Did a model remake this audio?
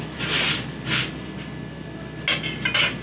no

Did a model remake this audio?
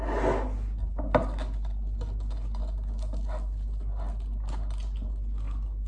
no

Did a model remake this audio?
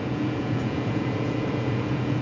yes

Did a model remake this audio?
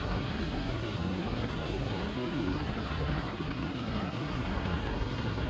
yes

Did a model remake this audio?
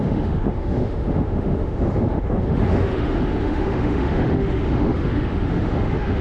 yes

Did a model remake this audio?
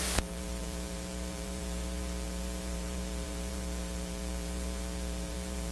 yes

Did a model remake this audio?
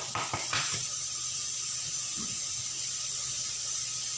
yes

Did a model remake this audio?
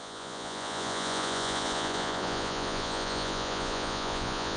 yes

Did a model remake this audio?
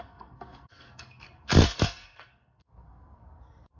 yes